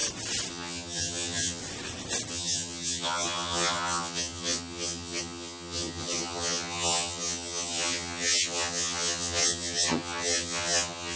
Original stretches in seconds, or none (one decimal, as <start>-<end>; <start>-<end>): 0.0-0.5; 1.6-2.3

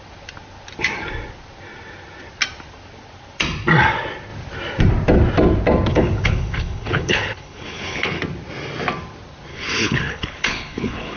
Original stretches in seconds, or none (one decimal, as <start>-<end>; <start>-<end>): 0.0-5.9; 8.2-9.5